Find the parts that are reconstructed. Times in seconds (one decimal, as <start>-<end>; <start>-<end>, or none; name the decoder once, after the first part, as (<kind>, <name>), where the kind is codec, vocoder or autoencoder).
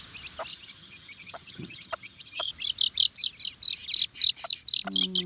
0.5-2.5 (vocoder, HiFi-GAN)